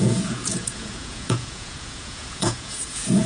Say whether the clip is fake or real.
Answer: fake